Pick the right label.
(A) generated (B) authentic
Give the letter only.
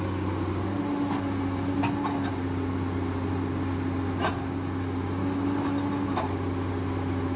B